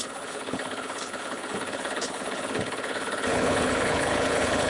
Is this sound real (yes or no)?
no